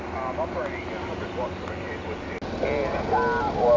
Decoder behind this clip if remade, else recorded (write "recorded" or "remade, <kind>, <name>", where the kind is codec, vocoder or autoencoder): recorded